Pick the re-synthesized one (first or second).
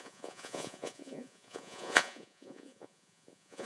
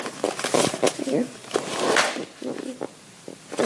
first